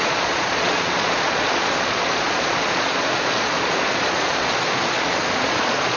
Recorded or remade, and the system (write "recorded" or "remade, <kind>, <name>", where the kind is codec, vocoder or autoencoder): remade, vocoder, Vocos